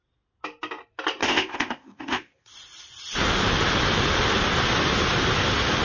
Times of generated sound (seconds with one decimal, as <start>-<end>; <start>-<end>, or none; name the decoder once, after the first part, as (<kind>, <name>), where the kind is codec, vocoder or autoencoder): 1.2-2.5 (codec, ZipCodec)